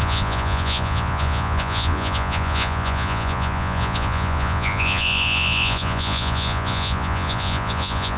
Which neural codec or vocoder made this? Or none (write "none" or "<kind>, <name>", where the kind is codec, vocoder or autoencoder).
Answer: vocoder, Vocos